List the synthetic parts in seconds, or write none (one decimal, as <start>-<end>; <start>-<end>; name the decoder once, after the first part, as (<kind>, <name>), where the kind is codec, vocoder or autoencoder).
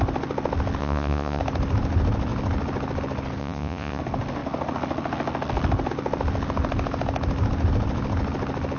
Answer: 0.8-1.4 (vocoder, Vocos); 3.4-4.0